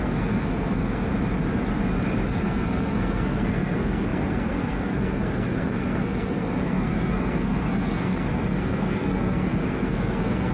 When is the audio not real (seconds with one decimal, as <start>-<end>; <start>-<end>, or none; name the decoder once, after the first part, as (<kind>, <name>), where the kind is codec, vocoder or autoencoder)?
0.0-1.1 (codec, SNAC); 2.3-10.5